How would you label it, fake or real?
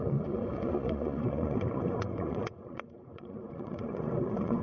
fake